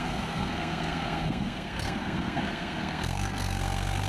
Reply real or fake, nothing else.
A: fake